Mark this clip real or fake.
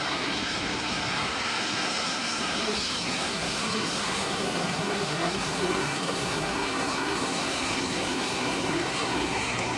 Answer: fake